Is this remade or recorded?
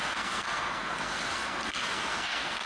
remade